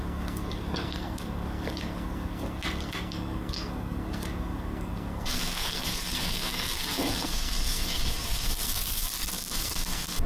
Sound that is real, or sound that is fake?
fake